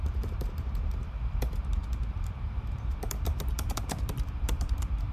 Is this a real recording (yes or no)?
no